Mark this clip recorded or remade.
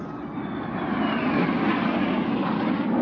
recorded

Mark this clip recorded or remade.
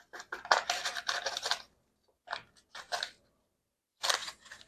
recorded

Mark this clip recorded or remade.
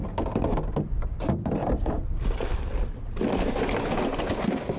recorded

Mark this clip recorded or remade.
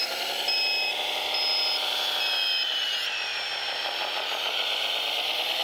recorded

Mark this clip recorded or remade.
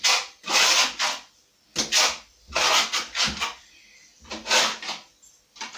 recorded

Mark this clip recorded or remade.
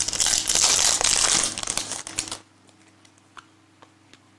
recorded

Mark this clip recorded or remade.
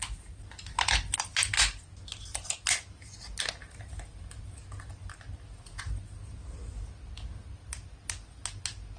recorded